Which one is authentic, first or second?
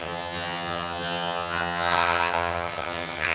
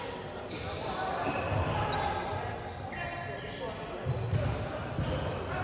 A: second